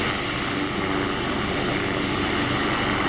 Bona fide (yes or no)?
yes